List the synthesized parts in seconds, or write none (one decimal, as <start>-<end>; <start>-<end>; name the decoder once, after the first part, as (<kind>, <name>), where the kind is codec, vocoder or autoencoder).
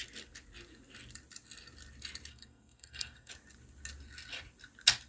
2.3-3.3 (codec, SNAC)